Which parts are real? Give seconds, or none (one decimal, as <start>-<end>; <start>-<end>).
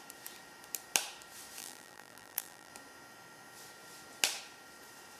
0.0-1.6; 2.7-5.2